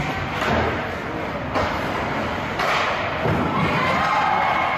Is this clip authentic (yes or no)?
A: yes